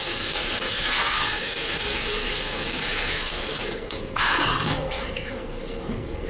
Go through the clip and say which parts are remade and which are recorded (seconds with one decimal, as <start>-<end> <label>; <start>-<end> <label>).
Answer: 0.0-6.3 remade